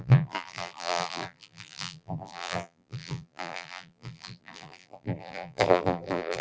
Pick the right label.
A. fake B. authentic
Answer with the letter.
A